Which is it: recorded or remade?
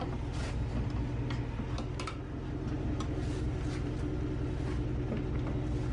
recorded